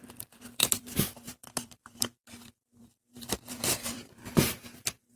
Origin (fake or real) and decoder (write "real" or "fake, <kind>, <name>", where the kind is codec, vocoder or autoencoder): fake, vocoder, BigVGAN v2